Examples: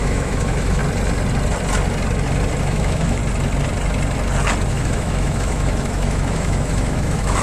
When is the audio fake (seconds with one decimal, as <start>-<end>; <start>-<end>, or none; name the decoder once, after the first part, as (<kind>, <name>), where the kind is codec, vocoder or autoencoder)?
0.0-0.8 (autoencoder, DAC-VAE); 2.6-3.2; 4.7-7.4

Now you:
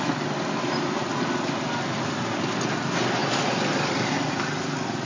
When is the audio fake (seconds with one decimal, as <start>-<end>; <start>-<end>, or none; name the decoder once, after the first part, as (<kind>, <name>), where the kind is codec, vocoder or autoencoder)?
none

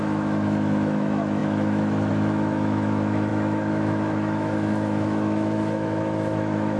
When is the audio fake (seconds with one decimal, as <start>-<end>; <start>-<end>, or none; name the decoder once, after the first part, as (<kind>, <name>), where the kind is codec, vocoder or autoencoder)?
0.0-6.8 (autoencoder, DAC-VAE)

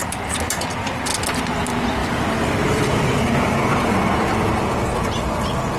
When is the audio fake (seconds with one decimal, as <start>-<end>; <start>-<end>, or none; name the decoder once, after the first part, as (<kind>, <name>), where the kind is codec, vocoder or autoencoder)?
2.0-4.1 (vocoder, BigVGAN v2)